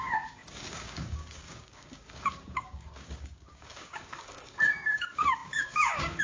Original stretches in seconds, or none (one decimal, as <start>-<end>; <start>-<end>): none